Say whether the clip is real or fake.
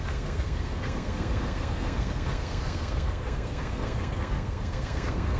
fake